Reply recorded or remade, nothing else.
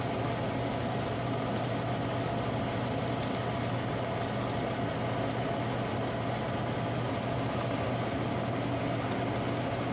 recorded